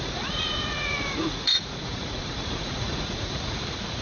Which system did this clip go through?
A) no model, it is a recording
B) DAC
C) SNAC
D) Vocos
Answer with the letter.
D